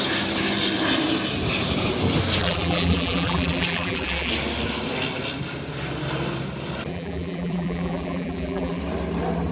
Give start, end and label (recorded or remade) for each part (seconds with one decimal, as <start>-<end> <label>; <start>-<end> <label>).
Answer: 0.0-2.4 recorded; 2.4-4.3 remade; 4.3-6.9 recorded; 6.9-8.8 remade; 8.8-9.5 recorded